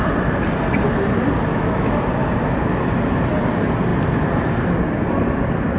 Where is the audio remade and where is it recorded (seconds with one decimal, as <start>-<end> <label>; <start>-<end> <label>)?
0.0-1.5 recorded; 1.5-2.1 remade; 2.1-5.8 recorded